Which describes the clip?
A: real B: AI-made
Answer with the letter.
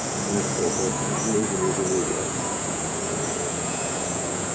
B